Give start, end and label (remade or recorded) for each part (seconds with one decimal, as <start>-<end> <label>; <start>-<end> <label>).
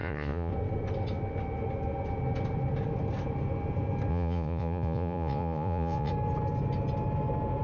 0.0-0.5 remade; 0.5-4.1 recorded; 4.1-6.1 remade; 6.1-7.6 recorded